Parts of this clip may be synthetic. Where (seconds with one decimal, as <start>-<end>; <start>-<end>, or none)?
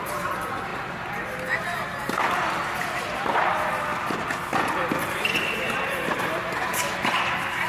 none